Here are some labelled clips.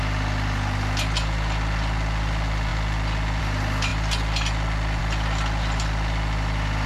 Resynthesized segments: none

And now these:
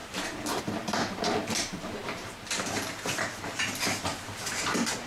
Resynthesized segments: 0.0-5.1 (vocoder, BigVGAN v2)

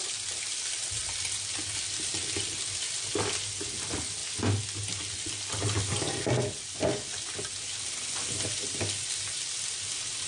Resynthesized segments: none

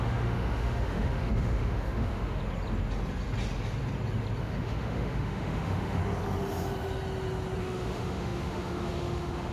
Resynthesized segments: 0.0-2.4 (autoencoder, DAC-VAE); 4.4-6.0; 7.6-9.5